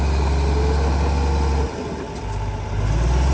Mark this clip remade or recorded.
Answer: recorded